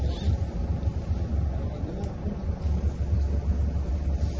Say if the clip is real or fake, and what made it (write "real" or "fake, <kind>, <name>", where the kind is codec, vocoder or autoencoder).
real